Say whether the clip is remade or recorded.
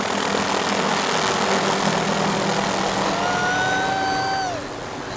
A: recorded